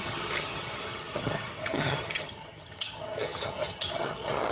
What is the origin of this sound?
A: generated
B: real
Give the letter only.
A